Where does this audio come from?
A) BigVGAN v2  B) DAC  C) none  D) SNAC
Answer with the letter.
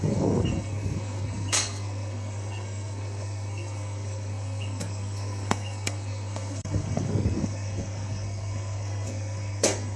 D